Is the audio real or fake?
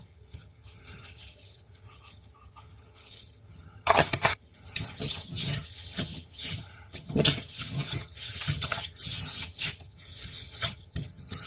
fake